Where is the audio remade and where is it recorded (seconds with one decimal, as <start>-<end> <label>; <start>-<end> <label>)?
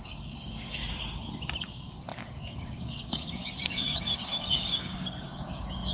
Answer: 0.0-0.8 remade; 0.8-1.6 recorded; 1.6-5.9 remade